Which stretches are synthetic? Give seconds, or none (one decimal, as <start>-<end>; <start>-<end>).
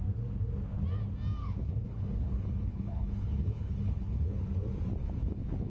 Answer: 1.4-4.4; 5.0-5.7